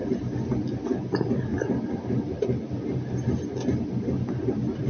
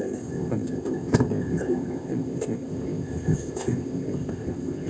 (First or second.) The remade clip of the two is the second